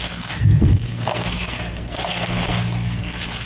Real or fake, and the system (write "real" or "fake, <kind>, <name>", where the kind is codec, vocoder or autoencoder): fake, codec, SNAC